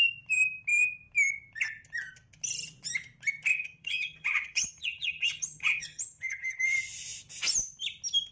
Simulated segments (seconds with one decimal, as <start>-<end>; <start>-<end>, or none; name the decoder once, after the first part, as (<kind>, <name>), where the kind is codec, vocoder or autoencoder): 3.5-6.6 (vocoder, HiFi-GAN)